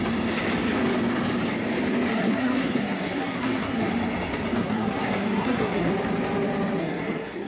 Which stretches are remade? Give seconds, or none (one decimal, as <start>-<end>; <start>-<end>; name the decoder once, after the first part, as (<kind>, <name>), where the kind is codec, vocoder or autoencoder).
2.1-3.9 (codec, SNAC); 4.6-5.9; 6.8-7.5